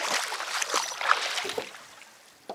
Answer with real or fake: real